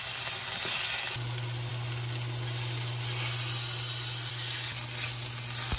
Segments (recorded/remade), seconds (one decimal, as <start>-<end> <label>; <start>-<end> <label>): 0.0-5.8 recorded